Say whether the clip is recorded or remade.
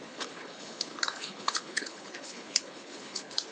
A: remade